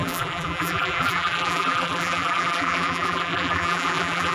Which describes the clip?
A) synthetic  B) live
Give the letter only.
A